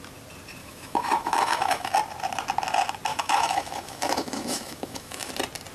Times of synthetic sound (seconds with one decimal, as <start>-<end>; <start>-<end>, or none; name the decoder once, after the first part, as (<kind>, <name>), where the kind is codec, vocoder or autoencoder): 0.6-1.9 (autoencoder, DAC-VAE); 3.1-5.3